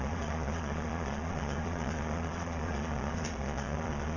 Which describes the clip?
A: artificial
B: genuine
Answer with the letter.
A